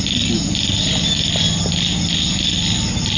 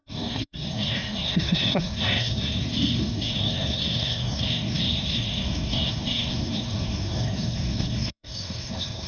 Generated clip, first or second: second